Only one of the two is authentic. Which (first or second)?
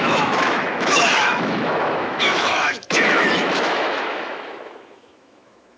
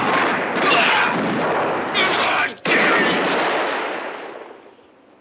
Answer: second